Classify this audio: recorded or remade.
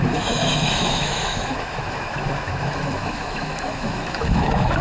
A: remade